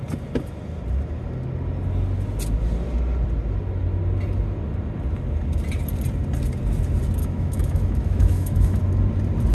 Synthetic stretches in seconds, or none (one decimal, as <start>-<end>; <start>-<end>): 7.2-8.8